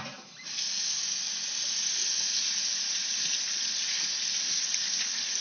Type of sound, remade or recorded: recorded